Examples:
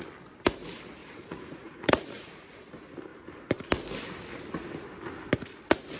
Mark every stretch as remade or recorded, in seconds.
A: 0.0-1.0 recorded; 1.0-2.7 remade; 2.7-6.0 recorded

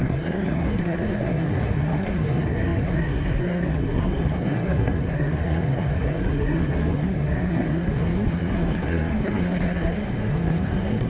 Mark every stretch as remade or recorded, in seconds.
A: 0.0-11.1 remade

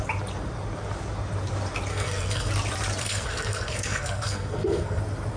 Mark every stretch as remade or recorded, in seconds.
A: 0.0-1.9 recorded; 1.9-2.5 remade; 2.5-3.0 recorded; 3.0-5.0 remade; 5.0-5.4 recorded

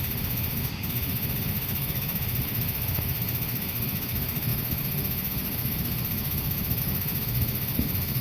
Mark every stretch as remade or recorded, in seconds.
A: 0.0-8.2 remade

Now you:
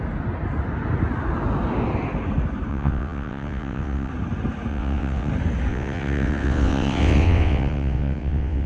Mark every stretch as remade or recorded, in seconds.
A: 0.0-2.7 recorded; 2.7-4.1 remade; 4.1-4.7 recorded; 4.7-5.3 remade; 5.3-5.7 recorded; 5.7-8.7 remade

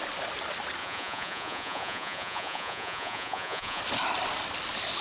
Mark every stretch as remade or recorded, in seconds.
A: 0.0-0.8 recorded; 0.8-3.8 remade; 3.8-5.0 recorded